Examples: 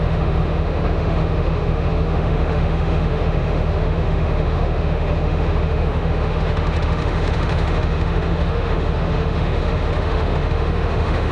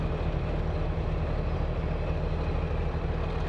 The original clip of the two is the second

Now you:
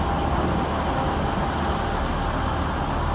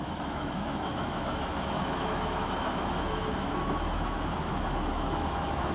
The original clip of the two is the first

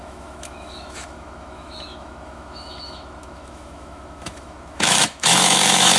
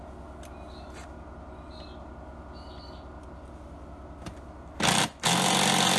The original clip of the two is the second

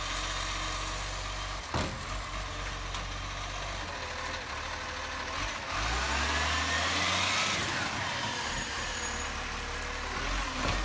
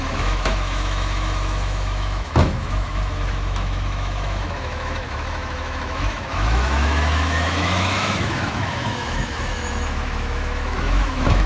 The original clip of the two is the first